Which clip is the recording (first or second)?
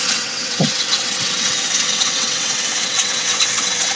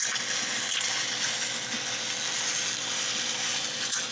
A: second